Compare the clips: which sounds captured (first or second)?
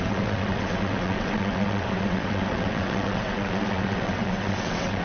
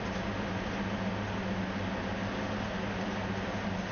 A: second